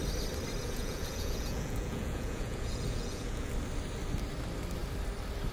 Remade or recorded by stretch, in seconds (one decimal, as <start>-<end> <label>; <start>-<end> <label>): 0.0-0.6 recorded; 0.6-3.5 remade; 3.5-5.5 recorded